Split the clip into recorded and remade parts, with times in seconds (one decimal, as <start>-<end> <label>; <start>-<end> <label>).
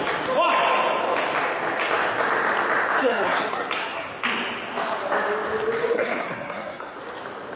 0.0-3.0 recorded; 3.0-4.1 remade; 4.1-5.9 recorded; 5.9-7.0 remade; 7.0-7.6 recorded